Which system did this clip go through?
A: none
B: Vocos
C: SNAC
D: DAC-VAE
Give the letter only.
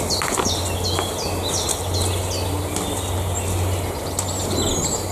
A